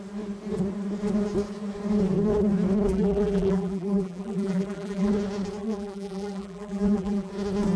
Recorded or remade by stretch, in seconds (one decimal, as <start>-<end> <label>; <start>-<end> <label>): 0.0-2.9 recorded; 2.9-5.1 remade; 5.1-5.6 recorded; 5.6-7.3 remade; 7.3-7.8 recorded